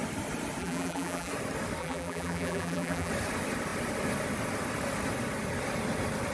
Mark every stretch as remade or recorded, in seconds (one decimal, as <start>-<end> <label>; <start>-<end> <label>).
0.0-0.6 recorded; 0.6-1.3 remade; 1.3-1.8 recorded; 1.8-3.1 remade; 3.1-6.3 recorded